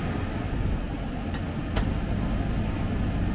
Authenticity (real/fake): real